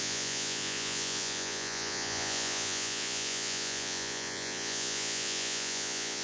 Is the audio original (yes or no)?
no